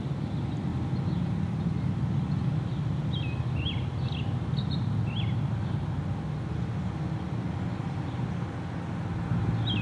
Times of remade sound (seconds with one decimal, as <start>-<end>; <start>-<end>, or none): none